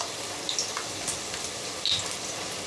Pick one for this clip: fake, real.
real